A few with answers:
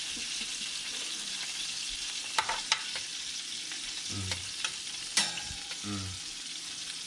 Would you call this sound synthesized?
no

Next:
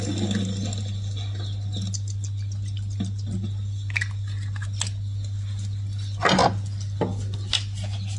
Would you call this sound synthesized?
no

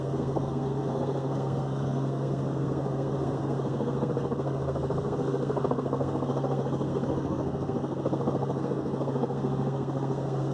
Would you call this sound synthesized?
yes